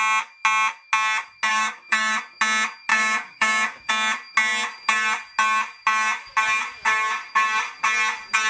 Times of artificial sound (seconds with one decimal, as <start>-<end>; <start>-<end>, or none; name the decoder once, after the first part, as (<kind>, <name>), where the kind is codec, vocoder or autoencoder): 1.5-2.2 (codec, DAC); 2.9-3.9